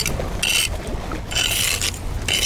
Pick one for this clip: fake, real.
real